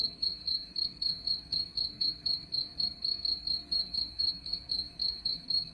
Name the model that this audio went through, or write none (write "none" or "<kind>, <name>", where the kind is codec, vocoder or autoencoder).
codec, SNAC